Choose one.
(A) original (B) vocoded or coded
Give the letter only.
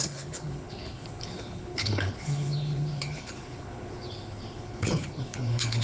B